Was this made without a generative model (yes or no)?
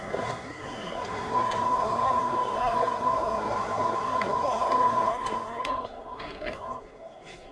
no